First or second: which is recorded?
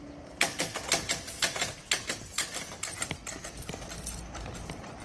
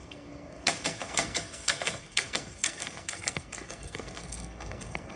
first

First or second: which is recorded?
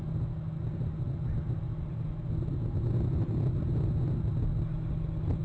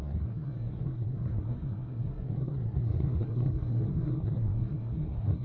first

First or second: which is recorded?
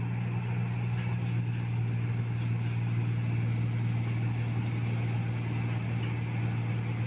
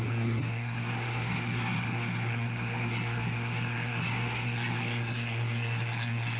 first